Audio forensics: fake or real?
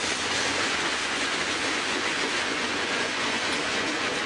fake